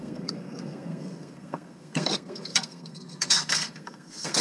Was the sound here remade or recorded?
remade